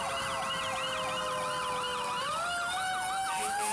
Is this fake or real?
real